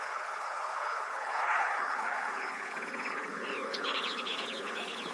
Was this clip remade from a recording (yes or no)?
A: yes